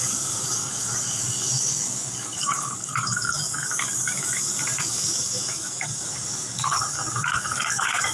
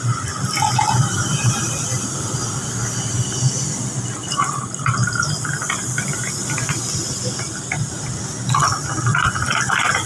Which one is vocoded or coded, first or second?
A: first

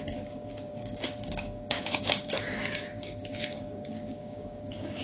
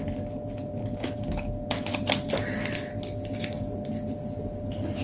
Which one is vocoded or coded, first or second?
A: first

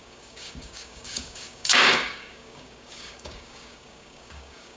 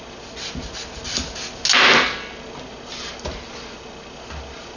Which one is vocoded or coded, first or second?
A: first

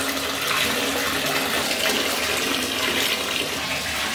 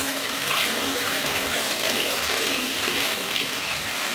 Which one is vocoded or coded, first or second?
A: second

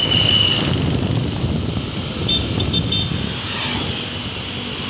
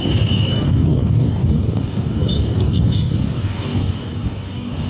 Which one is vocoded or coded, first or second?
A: second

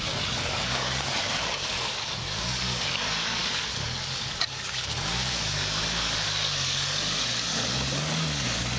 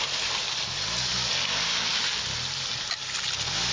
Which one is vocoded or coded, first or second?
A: first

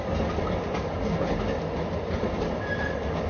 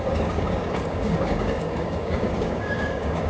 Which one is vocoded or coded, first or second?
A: second